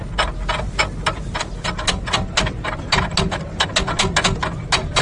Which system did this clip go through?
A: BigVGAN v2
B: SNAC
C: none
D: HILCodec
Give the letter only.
C